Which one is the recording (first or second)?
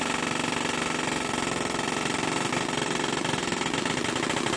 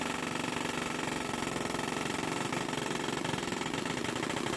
first